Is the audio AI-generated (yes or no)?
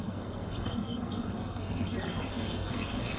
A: yes